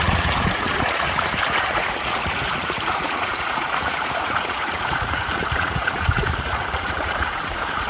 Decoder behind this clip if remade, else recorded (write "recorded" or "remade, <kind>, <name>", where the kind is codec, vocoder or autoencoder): remade, vocoder, Vocos